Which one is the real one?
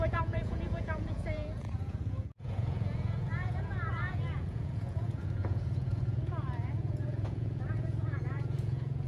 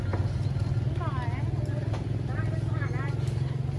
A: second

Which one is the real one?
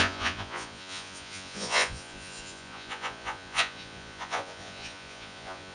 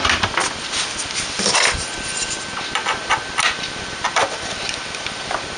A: second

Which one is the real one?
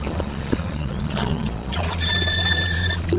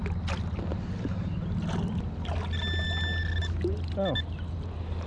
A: second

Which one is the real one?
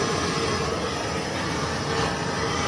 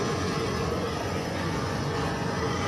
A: first